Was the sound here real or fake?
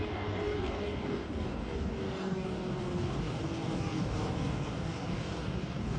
fake